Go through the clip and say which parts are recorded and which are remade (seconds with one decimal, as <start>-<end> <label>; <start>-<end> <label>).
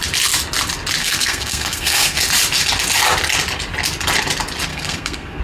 0.0-1.0 recorded; 1.0-2.2 remade; 2.2-4.7 recorded; 4.7-5.4 remade